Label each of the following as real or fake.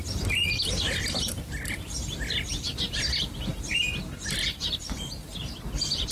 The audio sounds fake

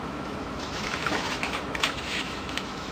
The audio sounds fake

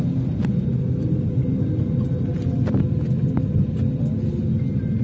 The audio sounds real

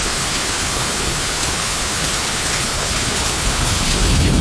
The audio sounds fake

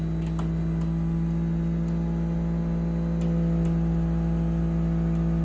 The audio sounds real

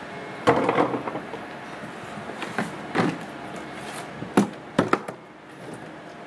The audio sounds real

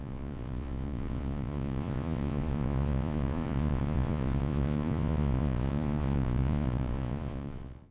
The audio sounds fake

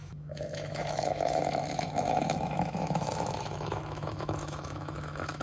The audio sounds fake